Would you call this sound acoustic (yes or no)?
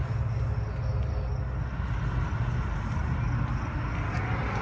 yes